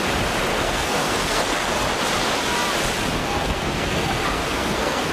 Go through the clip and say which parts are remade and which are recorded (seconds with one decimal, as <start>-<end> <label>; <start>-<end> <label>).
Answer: 0.0-0.5 recorded; 0.5-1.7 remade; 1.7-3.2 recorded; 3.2-5.1 remade